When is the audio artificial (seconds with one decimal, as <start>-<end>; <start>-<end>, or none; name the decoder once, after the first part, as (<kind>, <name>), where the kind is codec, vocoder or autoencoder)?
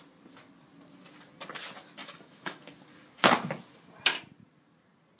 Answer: 2.0-2.6 (autoencoder, DAC-VAE)